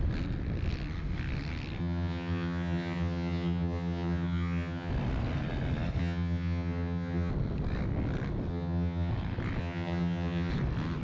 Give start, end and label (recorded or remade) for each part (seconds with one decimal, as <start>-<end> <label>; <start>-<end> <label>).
0.0-1.8 recorded; 1.8-4.9 remade; 4.9-6.0 recorded; 6.0-7.3 remade; 7.3-8.5 recorded; 8.5-9.1 remade; 9.1-9.6 recorded; 9.6-10.5 remade; 10.5-11.0 recorded